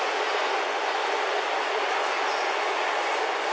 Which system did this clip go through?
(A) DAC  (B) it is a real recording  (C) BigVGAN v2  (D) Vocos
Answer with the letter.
D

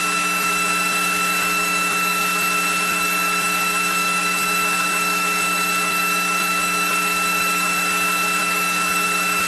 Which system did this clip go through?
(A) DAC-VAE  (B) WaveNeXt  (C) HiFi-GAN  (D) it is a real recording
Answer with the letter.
A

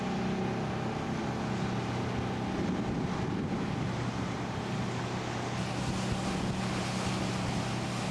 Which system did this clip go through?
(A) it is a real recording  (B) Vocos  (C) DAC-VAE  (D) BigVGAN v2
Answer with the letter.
A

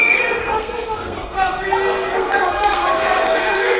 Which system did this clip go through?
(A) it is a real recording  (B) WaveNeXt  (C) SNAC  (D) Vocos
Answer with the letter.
C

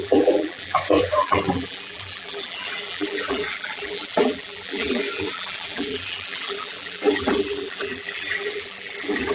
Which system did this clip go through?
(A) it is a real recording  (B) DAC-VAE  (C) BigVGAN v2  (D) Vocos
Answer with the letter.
C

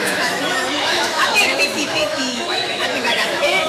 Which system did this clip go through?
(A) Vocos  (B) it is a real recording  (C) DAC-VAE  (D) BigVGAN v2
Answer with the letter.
C